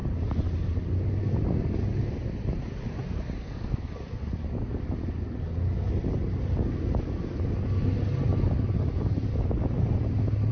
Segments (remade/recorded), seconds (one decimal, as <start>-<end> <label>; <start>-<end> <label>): 0.0-3.4 recorded; 3.4-3.9 remade; 3.9-10.5 recorded